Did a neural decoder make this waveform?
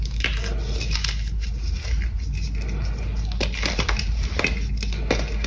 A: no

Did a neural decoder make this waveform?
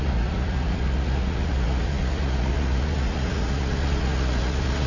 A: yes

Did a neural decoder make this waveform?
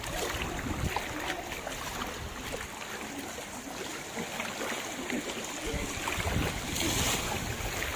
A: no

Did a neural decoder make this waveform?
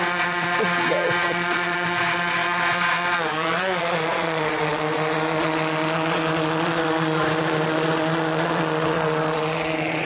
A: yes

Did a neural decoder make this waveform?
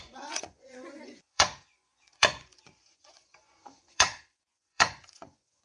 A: yes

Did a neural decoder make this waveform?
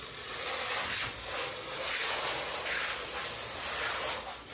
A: no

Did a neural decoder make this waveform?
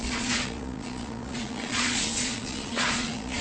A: yes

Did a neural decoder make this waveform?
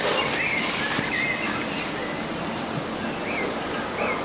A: no